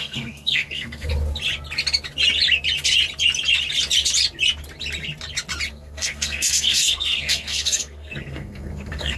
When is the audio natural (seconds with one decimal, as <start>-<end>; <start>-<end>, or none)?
1.1-5.7